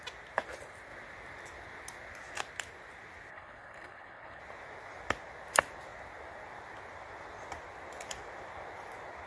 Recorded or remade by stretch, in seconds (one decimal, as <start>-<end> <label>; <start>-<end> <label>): 0.0-3.3 recorded; 3.3-4.4 remade; 4.4-9.3 recorded